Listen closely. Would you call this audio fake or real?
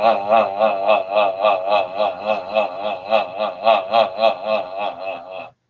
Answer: real